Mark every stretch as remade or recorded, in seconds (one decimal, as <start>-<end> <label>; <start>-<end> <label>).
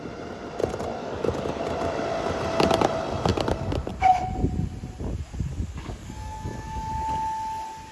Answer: 0.0-1.0 recorded; 1.0-1.6 remade; 1.6-5.5 recorded; 5.5-6.9 remade; 6.9-7.9 recorded